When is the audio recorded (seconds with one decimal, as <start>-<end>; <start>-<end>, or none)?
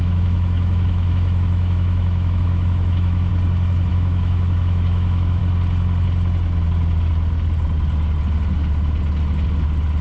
3.3-3.9; 5.4-10.0